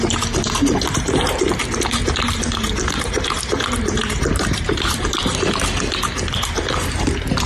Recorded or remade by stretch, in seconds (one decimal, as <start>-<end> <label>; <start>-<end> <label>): 0.0-1.6 remade; 1.6-2.3 recorded; 2.3-5.2 remade; 5.2-7.1 recorded; 7.1-7.5 remade